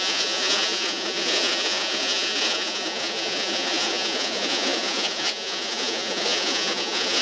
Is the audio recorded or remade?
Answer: remade